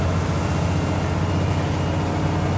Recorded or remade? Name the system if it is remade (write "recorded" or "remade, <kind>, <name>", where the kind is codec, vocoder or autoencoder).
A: recorded